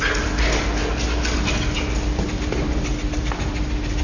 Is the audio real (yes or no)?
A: yes